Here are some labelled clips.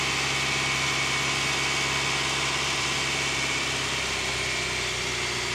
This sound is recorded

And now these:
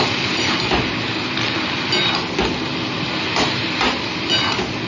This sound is recorded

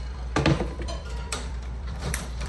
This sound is remade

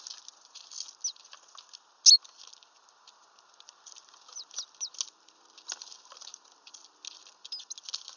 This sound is recorded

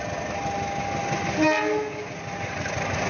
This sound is recorded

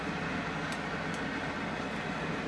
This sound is recorded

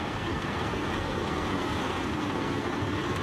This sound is remade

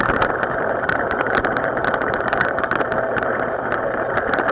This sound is remade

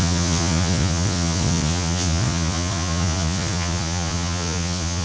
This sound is remade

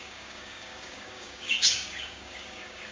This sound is remade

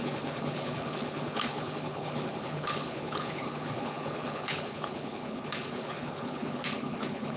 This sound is remade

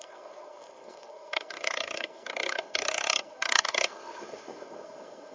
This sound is remade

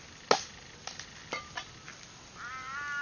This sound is recorded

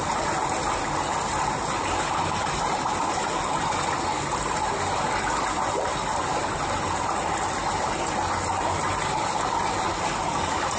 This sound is recorded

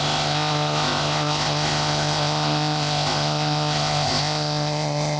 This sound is remade